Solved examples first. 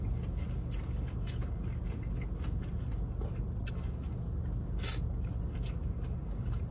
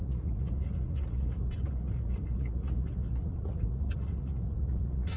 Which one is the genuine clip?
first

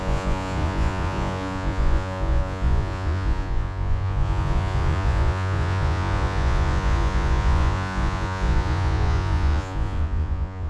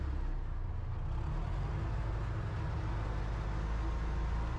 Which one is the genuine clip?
second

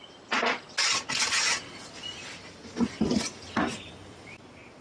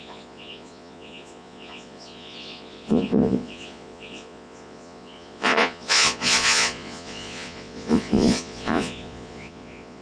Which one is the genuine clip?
first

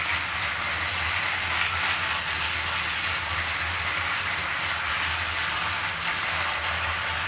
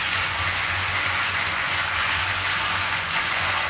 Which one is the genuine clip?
first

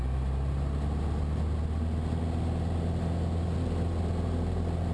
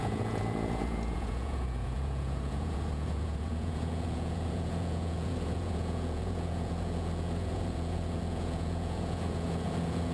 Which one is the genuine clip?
first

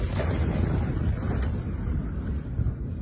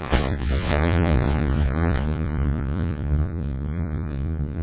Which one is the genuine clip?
first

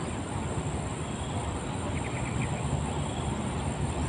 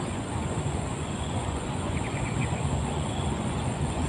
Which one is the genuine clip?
first